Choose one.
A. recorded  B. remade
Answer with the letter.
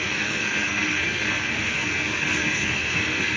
B